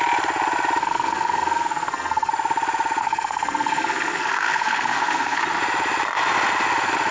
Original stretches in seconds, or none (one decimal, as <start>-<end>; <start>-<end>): 0.0-0.8; 2.3-3.0; 5.6-7.1